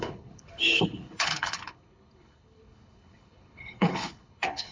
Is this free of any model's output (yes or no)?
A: no